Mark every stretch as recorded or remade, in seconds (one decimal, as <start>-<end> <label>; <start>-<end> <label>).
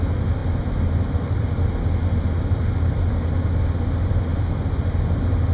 0.0-5.5 recorded